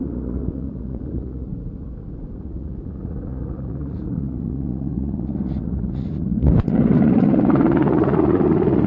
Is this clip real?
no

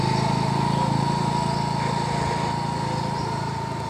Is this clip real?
yes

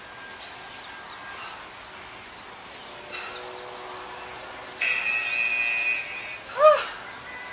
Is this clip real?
yes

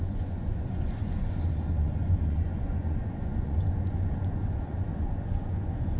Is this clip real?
no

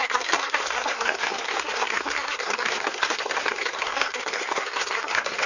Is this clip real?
no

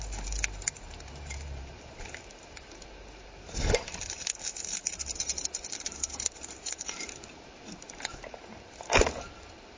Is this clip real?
no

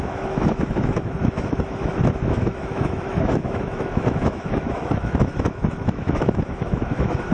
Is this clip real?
no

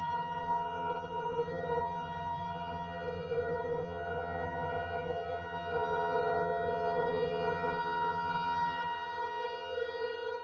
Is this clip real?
no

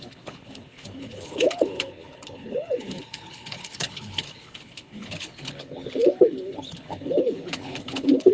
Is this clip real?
no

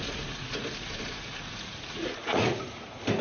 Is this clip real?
no